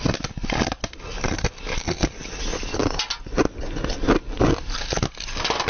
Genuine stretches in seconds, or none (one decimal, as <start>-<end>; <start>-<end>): 0.0-5.7